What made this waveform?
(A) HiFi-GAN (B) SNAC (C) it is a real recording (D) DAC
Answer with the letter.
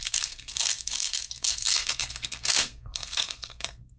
B